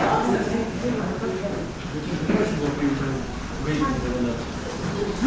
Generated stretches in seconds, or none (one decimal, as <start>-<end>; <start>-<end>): none